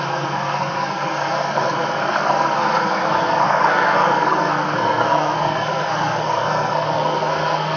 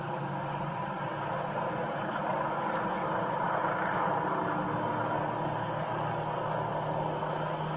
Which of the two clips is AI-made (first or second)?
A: first